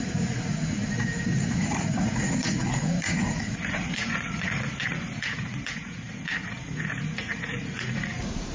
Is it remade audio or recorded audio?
remade